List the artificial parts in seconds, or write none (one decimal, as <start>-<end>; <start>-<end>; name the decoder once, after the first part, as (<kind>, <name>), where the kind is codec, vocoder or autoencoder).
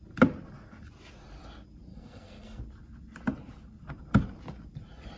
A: 1.9-2.6 (codec, SNAC)